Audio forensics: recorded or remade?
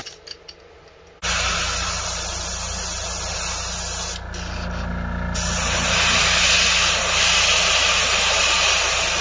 recorded